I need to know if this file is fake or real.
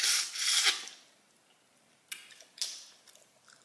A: real